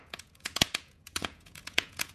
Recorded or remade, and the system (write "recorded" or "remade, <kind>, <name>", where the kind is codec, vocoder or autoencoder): remade, vocoder, Vocos